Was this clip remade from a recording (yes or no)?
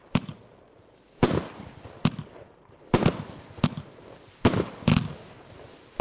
no